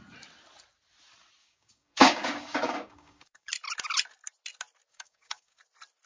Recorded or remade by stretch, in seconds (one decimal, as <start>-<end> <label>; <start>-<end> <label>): 0.0-1.4 recorded; 1.4-3.5 remade; 3.5-4.9 recorded; 4.9-5.6 remade; 5.6-6.1 recorded